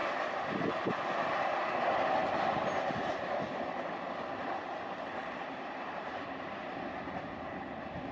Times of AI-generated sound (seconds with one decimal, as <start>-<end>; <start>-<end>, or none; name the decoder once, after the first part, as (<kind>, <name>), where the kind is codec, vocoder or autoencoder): 2.2-3.2 (vocoder, BigVGAN v2); 5.2-6.7